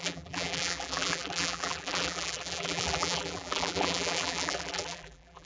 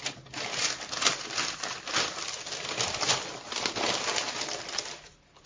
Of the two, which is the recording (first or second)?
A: second